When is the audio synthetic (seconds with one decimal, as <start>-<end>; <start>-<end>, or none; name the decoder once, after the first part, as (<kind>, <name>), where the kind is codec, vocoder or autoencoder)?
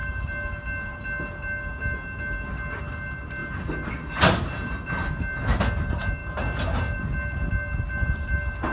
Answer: none